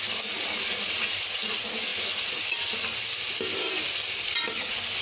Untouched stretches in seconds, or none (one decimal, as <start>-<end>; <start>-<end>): 0.0-5.0